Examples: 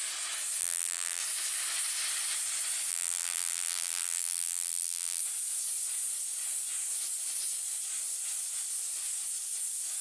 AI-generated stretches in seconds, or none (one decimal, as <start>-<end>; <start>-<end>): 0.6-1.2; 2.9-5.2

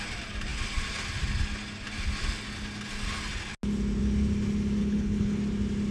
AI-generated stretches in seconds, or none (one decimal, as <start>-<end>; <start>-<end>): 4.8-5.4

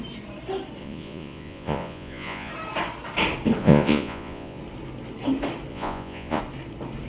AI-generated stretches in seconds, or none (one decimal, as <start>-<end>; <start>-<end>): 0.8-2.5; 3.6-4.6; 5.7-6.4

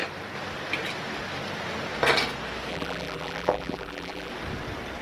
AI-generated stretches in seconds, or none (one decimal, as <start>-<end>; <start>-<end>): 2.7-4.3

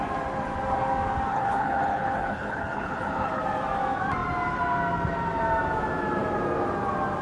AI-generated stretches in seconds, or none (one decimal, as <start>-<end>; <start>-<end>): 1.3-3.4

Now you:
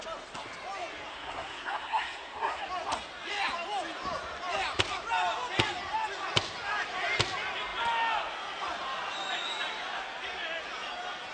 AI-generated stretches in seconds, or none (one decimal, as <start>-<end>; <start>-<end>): 1.1-2.6

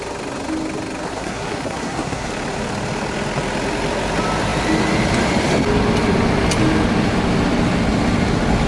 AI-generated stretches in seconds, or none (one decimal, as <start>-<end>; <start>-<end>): 1.1-2.3